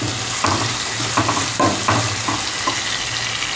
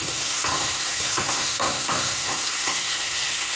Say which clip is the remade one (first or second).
second